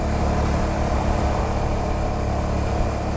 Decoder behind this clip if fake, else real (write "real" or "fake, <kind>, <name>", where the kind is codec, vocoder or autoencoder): real